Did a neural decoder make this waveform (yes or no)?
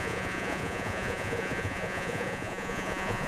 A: yes